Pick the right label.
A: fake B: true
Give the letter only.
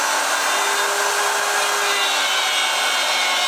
B